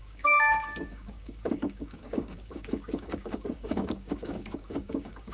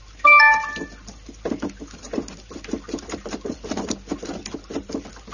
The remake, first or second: first